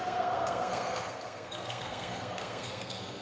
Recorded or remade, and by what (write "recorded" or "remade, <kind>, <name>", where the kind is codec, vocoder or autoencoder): remade, codec, SNAC